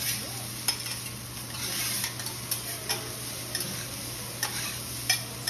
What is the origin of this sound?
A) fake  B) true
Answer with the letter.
B